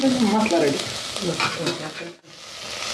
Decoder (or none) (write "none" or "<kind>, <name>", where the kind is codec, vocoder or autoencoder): none